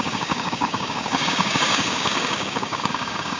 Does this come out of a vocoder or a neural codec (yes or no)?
yes